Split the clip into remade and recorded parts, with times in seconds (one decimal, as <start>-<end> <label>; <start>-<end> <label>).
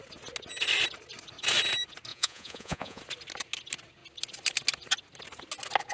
0.0-2.1 recorded; 2.1-3.0 remade; 3.0-5.9 recorded